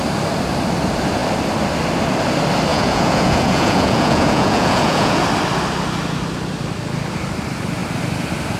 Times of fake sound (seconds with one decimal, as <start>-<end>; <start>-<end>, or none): 2.7-5.2